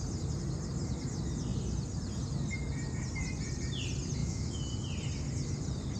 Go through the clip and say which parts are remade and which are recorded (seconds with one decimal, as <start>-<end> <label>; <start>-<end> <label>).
0.0-4.2 recorded; 4.2-4.7 remade; 4.7-6.0 recorded